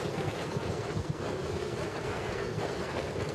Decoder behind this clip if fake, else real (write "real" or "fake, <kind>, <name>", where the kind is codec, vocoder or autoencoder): fake, codec, SNAC